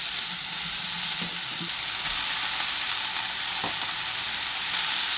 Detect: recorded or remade recorded